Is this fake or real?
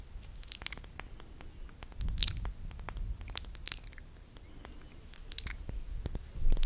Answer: real